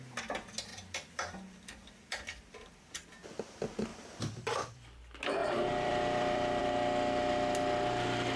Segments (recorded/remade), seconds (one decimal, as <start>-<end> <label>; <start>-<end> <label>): 0.0-0.7 recorded; 0.7-2.9 remade; 2.9-3.9 recorded; 3.9-5.0 remade; 5.0-5.4 recorded; 5.4-6.6 remade; 6.6-8.4 recorded